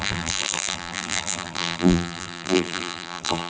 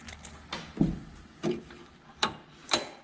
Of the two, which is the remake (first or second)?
first